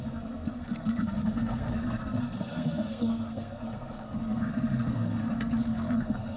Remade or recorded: remade